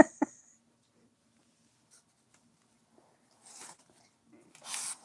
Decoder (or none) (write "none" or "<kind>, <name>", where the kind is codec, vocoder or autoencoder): none